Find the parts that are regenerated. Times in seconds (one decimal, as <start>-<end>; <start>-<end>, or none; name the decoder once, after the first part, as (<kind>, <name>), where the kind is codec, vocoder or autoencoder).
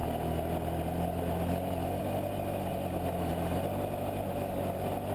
none